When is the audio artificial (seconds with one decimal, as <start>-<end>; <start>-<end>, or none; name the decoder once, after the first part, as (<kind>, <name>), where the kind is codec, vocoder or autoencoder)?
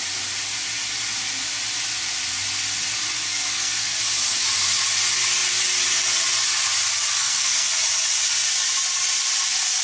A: 3.3-4.0 (codec, SNAC); 7.2-7.7